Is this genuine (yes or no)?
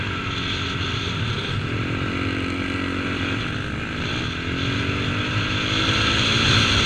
yes